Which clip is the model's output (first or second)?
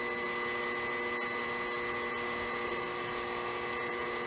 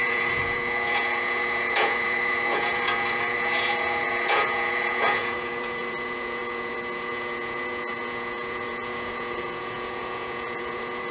second